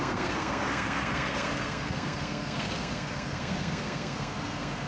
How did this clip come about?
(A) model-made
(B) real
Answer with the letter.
A